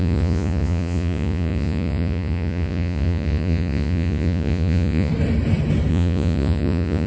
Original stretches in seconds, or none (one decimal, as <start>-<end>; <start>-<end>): 5.1-5.9